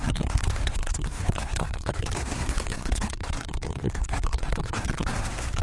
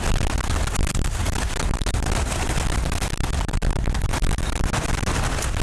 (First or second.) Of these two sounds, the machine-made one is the first